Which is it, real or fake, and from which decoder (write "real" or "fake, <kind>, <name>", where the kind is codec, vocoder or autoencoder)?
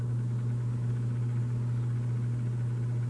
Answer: real